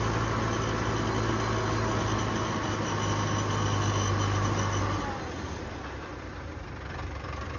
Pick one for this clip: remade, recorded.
recorded